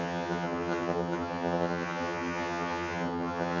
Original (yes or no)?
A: no